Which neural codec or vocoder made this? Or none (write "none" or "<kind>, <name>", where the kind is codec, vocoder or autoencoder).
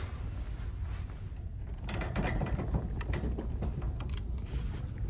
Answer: none